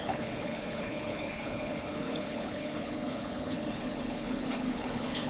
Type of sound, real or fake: fake